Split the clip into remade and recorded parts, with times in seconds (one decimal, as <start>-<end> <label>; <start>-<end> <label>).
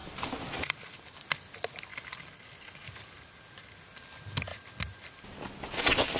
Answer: 0.0-1.1 remade; 1.1-1.9 recorded; 1.9-3.8 remade; 3.8-6.2 recorded